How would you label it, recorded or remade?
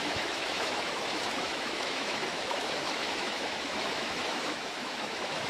remade